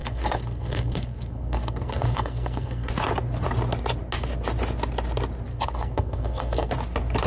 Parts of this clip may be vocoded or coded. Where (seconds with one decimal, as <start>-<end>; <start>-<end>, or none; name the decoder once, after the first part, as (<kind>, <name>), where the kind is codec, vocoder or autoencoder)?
0.0-2.9 (codec, SNAC); 5.5-6.7